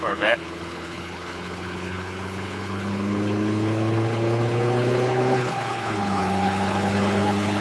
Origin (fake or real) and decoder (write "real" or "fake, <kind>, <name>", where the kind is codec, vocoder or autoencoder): fake, codec, HILCodec